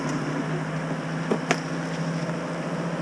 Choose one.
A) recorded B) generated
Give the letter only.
A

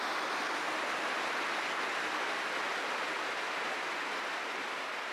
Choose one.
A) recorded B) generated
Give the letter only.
A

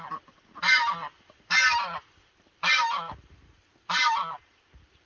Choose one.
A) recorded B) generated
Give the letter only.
A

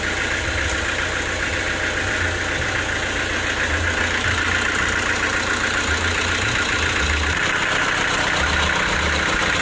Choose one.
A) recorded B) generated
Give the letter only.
A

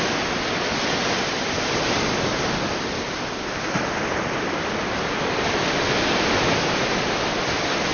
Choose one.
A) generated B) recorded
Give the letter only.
B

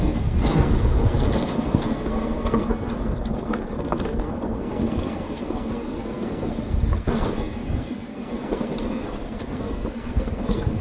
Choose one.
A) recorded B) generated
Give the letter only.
B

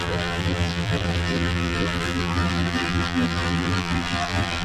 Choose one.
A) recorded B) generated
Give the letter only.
B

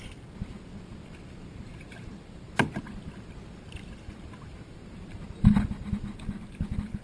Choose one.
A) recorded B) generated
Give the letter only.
A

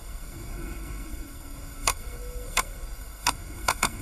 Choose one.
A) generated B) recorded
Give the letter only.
A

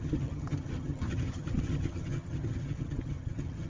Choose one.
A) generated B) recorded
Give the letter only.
A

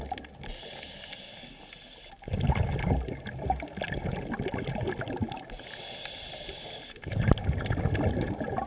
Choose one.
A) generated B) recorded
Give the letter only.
B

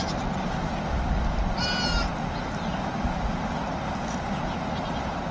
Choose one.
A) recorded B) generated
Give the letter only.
A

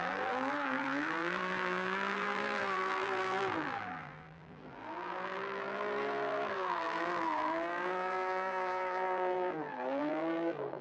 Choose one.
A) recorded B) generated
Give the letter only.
B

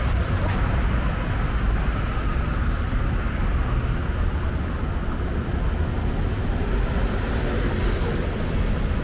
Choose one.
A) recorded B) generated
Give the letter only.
A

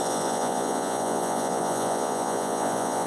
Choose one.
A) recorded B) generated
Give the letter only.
B